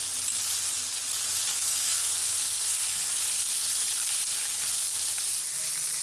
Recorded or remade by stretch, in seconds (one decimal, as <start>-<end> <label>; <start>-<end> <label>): 0.0-1.5 recorded; 1.5-3.1 remade; 3.1-6.0 recorded